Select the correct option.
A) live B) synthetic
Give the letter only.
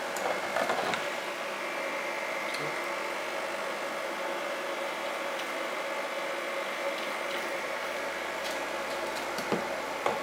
A